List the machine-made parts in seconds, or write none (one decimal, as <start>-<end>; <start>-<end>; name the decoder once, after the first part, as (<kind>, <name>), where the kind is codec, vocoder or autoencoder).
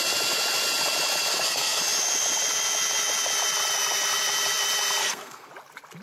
1.3-1.8 (codec, SNAC); 5.0-5.5